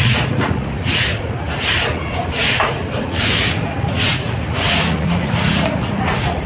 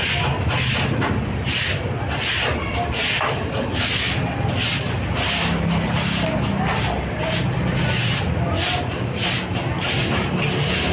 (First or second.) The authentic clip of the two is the second